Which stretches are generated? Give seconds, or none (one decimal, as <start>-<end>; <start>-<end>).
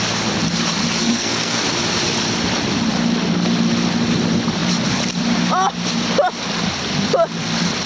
1.0-1.6